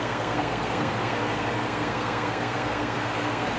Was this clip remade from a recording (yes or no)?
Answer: yes